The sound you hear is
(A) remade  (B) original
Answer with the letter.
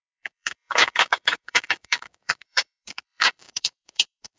A